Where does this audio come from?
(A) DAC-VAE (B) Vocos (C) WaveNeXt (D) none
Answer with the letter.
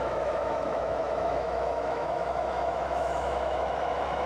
A